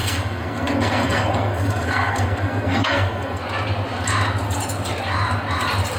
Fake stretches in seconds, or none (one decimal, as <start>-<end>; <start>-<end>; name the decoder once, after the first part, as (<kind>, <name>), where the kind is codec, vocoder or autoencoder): 0.0-3.4 (codec, SNAC)